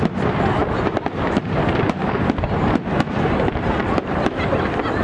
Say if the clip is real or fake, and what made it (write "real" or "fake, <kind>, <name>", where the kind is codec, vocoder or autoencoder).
real